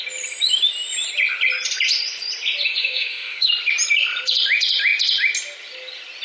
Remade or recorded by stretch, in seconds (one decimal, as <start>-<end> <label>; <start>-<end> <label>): 0.0-2.8 recorded; 2.8-3.5 remade; 3.5-6.2 recorded